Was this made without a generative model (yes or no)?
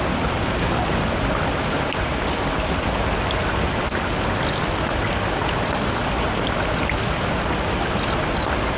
yes